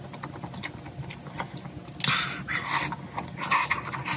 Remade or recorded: recorded